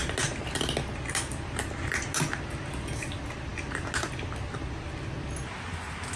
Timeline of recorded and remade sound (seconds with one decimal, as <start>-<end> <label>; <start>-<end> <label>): 0.0-6.2 recorded